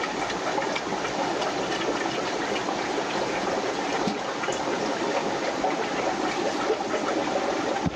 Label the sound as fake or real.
real